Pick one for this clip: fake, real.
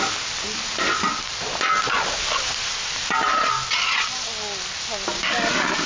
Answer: real